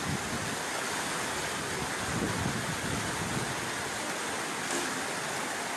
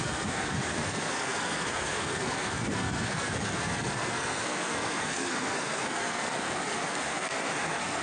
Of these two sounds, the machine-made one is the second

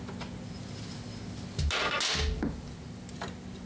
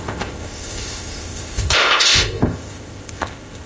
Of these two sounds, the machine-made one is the second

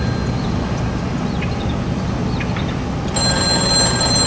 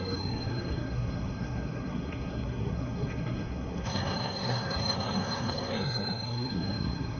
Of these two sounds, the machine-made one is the second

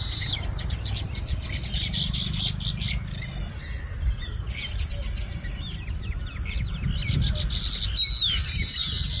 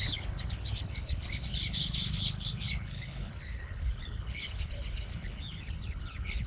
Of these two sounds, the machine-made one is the second